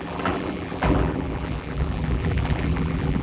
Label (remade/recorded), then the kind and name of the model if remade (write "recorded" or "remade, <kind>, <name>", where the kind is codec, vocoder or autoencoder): remade, vocoder, BigVGAN v2